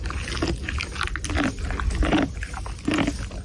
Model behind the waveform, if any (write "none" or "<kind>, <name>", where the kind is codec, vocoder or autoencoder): none